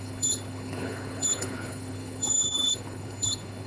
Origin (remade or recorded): remade